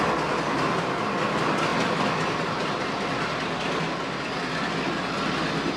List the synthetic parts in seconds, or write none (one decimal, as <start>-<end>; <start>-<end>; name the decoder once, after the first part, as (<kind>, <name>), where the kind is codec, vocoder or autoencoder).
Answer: none